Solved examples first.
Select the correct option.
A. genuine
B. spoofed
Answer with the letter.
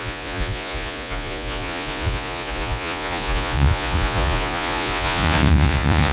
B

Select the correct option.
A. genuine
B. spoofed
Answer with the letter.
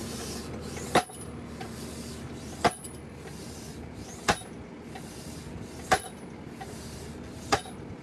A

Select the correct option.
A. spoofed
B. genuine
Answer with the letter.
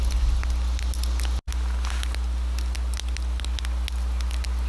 B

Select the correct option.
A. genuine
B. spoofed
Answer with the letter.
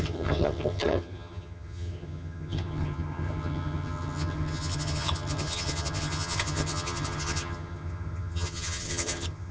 B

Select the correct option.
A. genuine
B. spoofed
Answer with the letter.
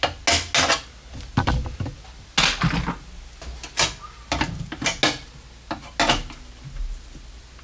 A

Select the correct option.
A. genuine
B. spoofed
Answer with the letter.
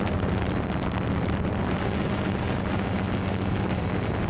A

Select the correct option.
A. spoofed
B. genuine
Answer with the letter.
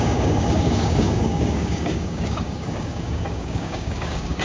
A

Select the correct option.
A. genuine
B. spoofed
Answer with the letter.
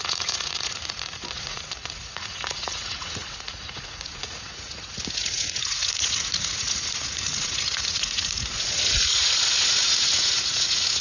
B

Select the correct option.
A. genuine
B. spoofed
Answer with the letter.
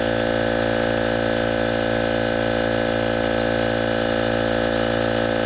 A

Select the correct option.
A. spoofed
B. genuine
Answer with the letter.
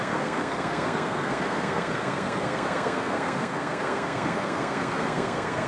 A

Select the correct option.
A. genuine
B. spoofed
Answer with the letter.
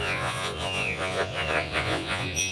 B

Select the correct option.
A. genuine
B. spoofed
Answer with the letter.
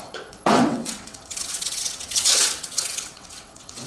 B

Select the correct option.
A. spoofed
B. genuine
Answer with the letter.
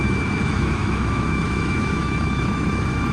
A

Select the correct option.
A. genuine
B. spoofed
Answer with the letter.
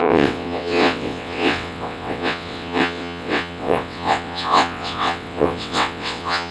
B